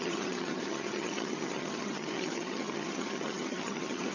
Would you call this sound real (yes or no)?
no